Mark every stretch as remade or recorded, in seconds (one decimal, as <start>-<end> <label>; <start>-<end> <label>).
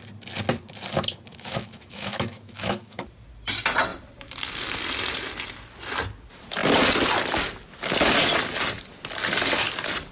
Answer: 0.0-1.3 recorded; 1.3-3.0 remade; 3.0-10.1 recorded